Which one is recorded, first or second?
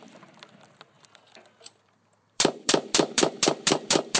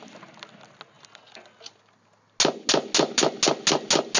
second